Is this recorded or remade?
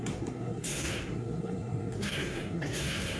remade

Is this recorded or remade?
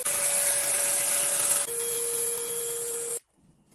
recorded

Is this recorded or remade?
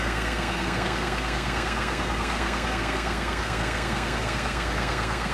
remade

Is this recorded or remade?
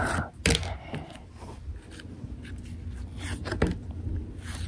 recorded